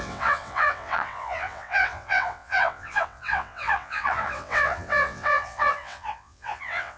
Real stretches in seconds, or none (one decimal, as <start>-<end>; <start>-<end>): none